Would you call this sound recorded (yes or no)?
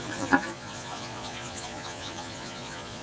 no